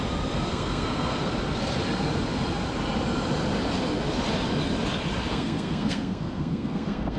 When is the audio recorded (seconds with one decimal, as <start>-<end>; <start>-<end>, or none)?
0.0-0.5; 1.3-5.3